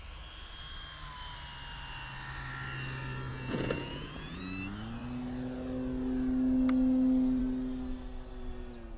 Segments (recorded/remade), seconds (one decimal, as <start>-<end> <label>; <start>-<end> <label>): 0.0-3.3 recorded; 3.3-4.4 remade; 4.4-9.0 recorded